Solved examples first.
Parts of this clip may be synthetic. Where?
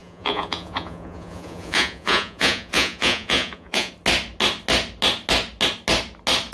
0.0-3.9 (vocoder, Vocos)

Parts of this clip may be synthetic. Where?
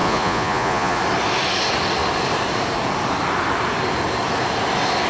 0.0-1.0 (vocoder, Vocos)